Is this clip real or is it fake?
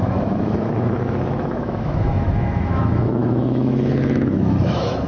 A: fake